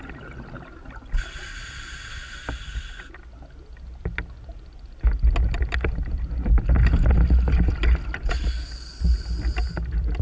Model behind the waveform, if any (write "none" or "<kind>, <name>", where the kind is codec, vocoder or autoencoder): none